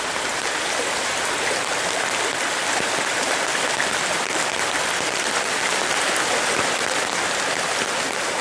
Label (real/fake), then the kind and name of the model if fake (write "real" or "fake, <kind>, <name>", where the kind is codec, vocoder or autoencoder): real